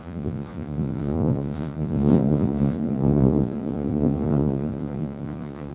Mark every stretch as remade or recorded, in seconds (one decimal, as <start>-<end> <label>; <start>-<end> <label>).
0.0-5.7 remade